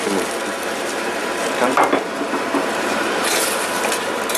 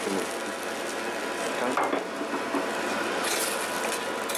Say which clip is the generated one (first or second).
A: first